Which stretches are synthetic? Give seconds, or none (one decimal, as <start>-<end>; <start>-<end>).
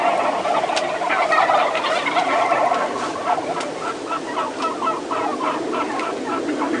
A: none